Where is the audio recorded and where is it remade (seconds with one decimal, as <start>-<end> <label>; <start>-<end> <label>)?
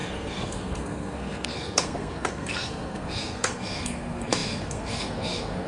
0.0-5.7 remade